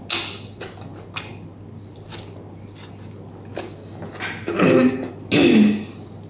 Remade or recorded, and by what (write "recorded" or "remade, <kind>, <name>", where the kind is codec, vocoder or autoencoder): recorded